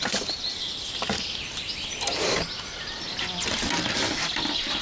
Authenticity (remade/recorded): recorded